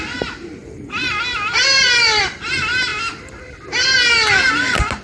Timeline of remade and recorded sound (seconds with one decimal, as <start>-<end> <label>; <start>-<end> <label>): 0.0-0.6 recorded; 0.6-2.2 remade; 2.2-5.0 recorded